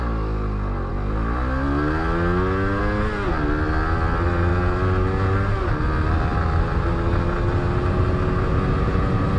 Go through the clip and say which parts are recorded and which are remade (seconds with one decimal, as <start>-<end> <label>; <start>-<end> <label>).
0.0-9.4 recorded